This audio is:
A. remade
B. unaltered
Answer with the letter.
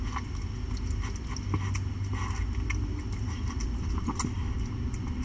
B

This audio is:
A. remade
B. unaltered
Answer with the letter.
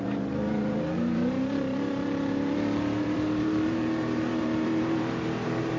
A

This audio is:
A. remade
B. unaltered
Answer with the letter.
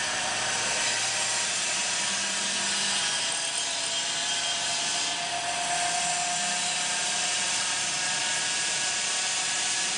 B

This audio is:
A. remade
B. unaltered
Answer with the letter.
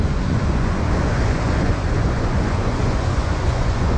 A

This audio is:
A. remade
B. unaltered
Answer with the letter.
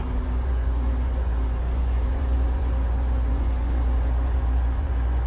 A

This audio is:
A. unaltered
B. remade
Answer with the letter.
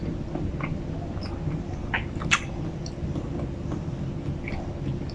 A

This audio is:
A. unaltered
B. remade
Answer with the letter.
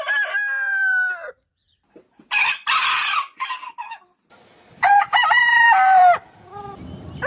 B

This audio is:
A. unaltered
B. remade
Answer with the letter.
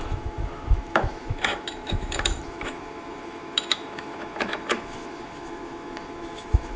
B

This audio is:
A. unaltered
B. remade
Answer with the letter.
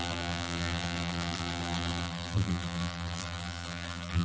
B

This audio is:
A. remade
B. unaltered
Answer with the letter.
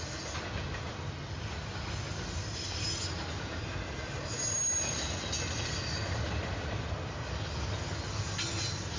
B